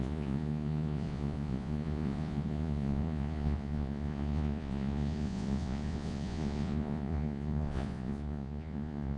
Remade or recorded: remade